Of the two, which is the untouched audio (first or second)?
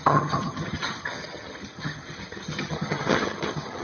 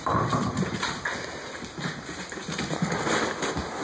second